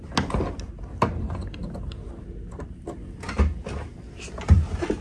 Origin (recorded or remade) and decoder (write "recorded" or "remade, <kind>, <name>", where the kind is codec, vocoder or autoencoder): recorded